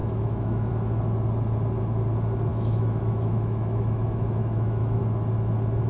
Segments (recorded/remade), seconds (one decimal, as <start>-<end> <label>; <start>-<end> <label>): 0.0-0.7 remade; 0.7-2.5 recorded; 2.5-5.0 remade; 5.0-5.9 recorded